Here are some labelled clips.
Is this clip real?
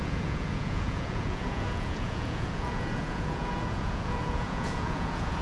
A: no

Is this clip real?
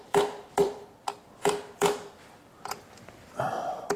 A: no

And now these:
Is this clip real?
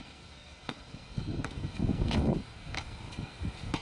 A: no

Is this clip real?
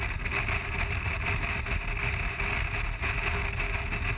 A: yes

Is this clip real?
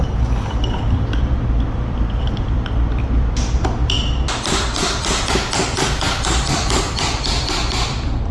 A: no